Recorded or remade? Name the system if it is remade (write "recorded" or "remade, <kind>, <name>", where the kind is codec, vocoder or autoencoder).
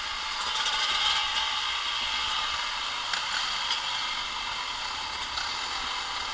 recorded